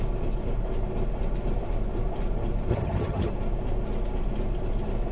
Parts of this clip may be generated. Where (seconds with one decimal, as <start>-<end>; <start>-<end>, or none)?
2.7-3.3